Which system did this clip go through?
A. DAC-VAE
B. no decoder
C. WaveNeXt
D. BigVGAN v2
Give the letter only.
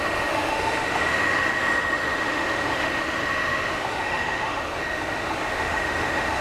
A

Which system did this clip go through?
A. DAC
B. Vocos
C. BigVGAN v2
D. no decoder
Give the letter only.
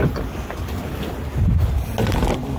D